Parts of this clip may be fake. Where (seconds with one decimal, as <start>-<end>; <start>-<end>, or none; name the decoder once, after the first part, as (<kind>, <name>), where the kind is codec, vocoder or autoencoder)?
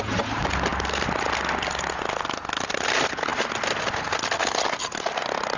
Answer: none